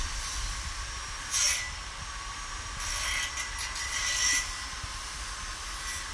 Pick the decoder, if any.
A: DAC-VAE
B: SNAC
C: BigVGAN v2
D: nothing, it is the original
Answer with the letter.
D